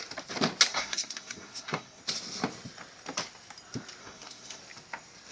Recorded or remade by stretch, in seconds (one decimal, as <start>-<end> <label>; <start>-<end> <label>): 0.0-0.7 recorded; 0.7-2.0 remade; 2.0-4.0 recorded; 4.0-4.6 remade; 4.6-5.3 recorded